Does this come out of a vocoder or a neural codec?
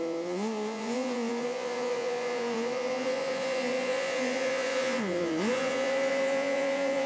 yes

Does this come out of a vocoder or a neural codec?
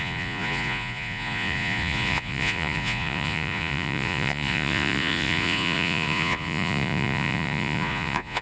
yes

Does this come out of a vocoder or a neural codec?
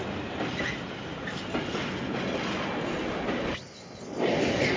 no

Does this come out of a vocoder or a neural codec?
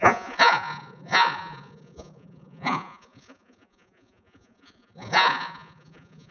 yes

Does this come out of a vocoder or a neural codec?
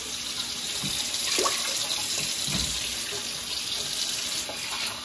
no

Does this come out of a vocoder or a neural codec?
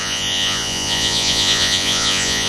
yes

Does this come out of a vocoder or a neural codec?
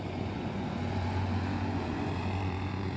yes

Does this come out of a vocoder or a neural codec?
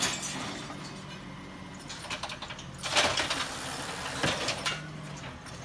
no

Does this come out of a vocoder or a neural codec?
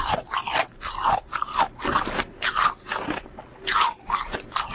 no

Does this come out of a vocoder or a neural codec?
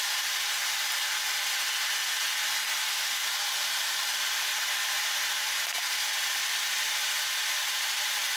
no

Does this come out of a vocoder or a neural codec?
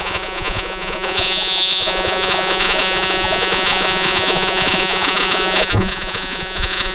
yes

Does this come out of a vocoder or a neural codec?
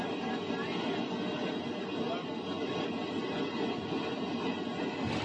no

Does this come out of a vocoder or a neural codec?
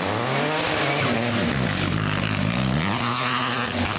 no